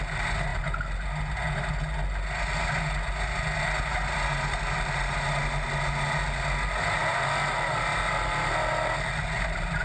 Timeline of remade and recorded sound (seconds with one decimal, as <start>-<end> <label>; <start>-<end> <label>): 0.0-9.8 recorded